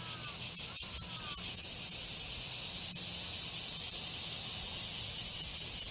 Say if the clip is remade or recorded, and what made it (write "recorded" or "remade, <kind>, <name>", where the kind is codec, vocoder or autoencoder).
recorded